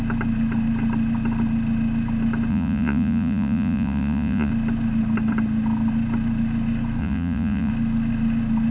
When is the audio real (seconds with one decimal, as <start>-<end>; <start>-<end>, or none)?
0.0-2.5; 4.5-7.0; 7.7-8.7